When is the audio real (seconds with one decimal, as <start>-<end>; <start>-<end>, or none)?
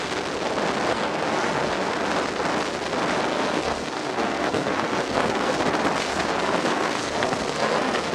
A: 0.0-0.9; 1.9-3.3; 5.6-6.1